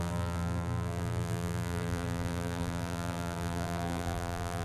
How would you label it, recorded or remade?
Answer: remade